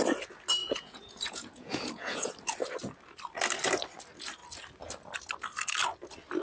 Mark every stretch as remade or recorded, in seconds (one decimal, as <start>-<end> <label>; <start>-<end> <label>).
0.0-0.6 recorded; 0.6-2.3 remade; 2.3-6.4 recorded